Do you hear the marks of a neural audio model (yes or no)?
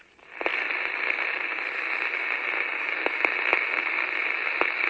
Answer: no